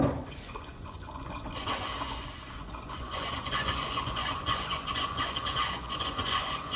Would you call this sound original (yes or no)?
no